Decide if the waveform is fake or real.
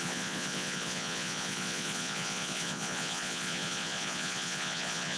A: fake